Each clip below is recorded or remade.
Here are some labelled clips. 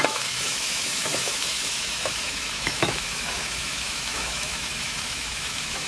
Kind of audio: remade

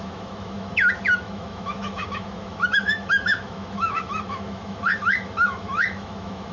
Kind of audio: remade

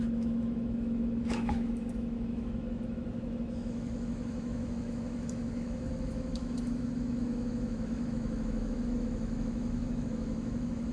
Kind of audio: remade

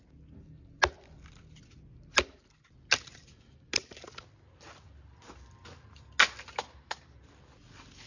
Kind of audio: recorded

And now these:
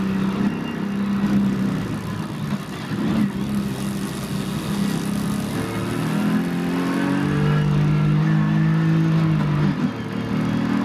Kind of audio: recorded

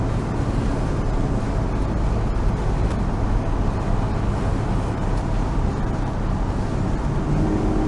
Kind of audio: recorded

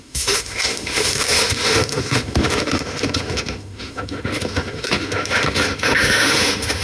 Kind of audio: remade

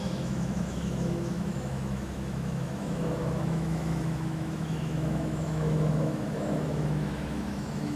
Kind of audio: remade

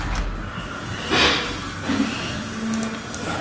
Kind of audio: recorded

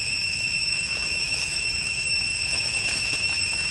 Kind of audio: remade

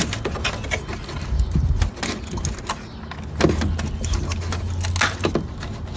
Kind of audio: recorded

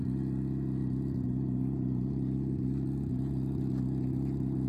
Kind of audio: recorded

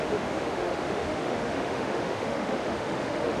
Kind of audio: remade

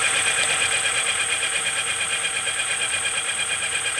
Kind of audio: recorded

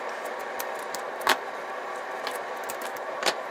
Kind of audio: recorded